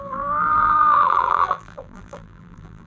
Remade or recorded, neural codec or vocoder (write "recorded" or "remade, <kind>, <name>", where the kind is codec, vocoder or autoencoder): remade, vocoder, BigVGAN v2